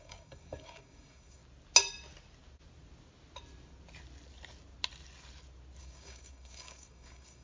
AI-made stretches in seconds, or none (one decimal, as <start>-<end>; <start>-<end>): 0.0-1.4; 5.8-7.4